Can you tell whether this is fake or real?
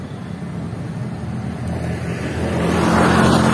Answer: real